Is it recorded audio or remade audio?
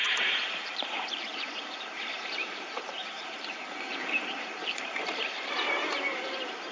remade